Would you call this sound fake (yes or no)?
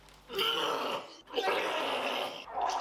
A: yes